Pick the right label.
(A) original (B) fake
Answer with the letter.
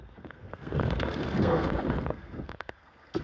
B